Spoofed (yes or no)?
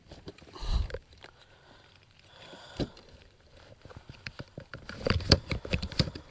yes